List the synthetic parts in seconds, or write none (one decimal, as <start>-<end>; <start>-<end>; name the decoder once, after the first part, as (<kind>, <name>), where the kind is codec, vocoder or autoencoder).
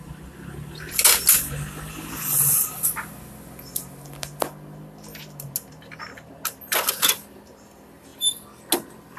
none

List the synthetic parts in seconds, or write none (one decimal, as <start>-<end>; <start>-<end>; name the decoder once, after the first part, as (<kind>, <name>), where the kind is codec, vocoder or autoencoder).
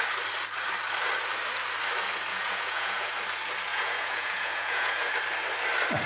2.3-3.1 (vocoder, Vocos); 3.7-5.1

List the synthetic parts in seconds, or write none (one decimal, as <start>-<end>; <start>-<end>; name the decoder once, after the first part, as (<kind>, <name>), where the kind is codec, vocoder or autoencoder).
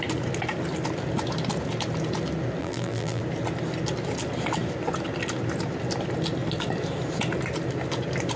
2.6-3.2 (vocoder, BigVGAN v2)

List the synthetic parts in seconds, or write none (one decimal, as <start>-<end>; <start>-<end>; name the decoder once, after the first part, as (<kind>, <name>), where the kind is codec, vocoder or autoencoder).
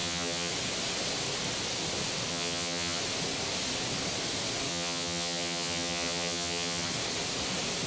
0.0-0.5 (vocoder, HiFi-GAN); 2.3-3.0; 4.7-6.9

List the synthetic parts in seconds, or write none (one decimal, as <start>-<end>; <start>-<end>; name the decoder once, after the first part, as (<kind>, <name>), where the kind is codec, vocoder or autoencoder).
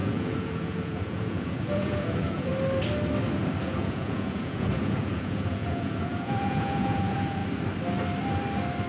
0.0-2.5 (vocoder, Vocos); 3.6-7.4